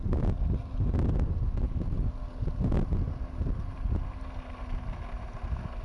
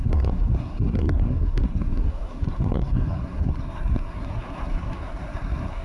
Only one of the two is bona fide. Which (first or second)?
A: first